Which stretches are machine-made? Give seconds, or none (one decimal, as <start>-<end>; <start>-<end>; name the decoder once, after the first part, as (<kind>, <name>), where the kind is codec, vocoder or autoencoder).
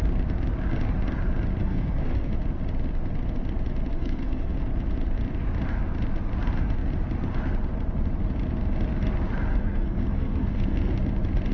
1.6-2.3 (codec, SNAC); 3.9-4.5; 9.5-11.0